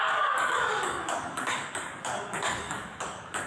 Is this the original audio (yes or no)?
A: no